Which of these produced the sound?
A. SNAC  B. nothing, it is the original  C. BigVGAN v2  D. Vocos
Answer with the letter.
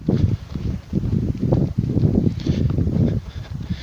C